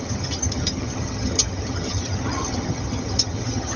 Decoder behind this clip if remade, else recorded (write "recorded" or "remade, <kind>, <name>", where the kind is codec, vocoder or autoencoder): remade, vocoder, HiFi-GAN